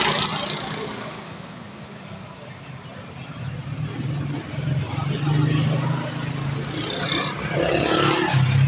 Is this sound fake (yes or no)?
no